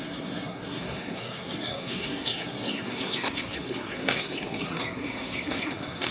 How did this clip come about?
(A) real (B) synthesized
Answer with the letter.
B